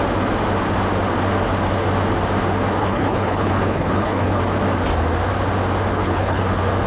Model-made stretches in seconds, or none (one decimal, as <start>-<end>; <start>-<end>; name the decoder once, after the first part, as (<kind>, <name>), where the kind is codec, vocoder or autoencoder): 2.8-4.4 (codec, HILCodec); 5.9-6.4